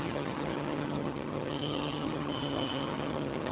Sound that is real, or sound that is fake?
fake